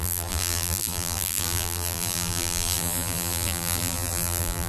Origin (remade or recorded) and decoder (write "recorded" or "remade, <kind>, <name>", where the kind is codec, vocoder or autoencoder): remade, vocoder, BigVGAN v2